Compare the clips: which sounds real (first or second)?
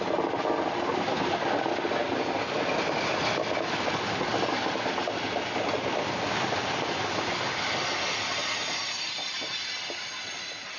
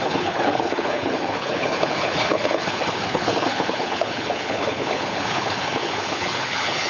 first